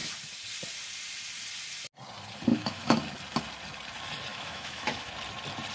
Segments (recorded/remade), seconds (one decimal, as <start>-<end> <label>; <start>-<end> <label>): 0.0-2.5 recorded; 2.5-3.0 remade; 3.0-4.3 recorded; 4.3-5.1 remade; 5.1-5.7 recorded